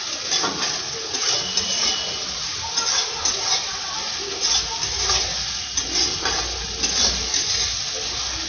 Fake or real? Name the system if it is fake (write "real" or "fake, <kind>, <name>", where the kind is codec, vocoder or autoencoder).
real